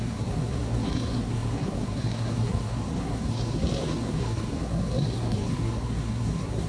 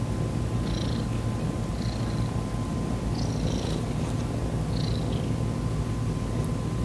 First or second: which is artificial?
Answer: first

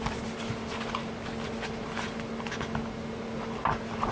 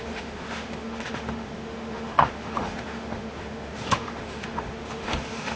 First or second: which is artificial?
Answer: second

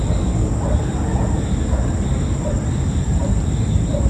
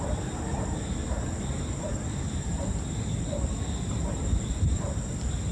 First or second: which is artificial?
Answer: second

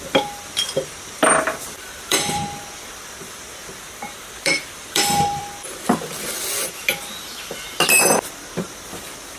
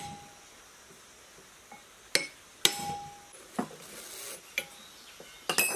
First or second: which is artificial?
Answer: first